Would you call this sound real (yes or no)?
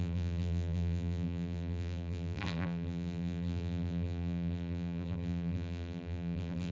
no